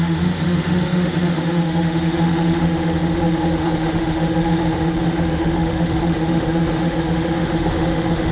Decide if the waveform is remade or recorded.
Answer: remade